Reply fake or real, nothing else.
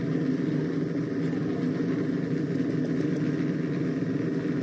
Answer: real